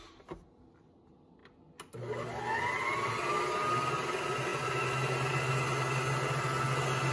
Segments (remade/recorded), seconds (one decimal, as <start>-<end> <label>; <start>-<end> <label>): 0.0-7.1 recorded